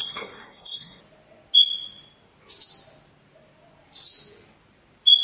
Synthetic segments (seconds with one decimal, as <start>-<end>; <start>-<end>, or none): 0.0-1.0